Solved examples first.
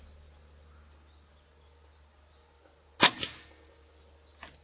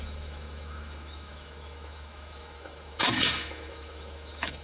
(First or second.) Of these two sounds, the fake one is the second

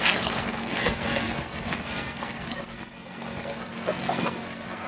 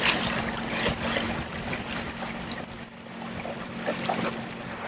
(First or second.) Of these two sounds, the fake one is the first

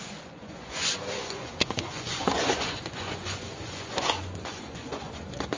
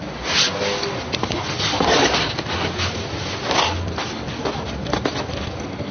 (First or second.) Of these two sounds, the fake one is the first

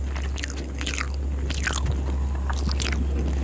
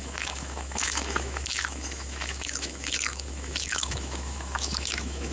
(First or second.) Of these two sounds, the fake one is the second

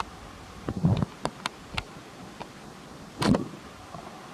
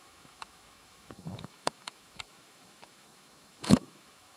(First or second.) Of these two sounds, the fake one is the second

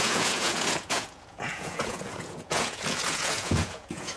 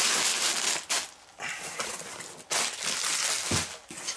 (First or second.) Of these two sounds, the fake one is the first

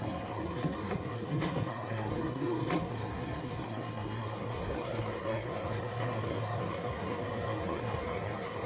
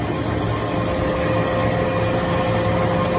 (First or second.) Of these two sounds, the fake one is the first